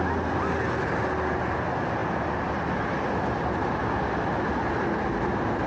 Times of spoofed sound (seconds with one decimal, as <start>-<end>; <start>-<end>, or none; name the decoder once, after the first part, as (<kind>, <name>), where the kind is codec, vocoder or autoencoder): none